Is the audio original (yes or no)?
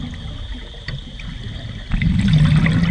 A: yes